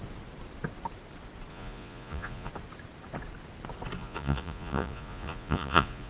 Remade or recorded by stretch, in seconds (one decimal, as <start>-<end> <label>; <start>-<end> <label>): 0.0-1.5 recorded; 1.5-2.5 remade; 2.5-4.0 recorded; 4.0-6.1 remade